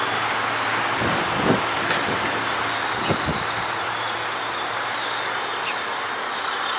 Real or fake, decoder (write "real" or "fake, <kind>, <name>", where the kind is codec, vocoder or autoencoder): real